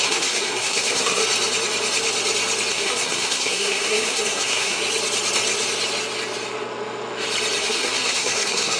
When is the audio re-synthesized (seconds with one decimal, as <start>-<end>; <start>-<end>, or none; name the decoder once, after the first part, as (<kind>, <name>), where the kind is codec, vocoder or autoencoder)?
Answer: 0.0-1.2 (codec, SNAC); 2.7-4.8; 7.6-8.8

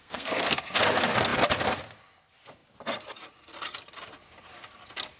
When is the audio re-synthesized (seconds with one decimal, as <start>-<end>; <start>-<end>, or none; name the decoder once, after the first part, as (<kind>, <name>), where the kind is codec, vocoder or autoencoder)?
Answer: 0.0-0.8 (codec, SNAC)